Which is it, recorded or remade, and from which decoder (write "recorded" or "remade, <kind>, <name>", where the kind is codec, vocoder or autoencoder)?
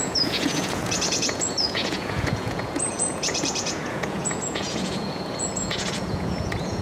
remade, vocoder, Vocos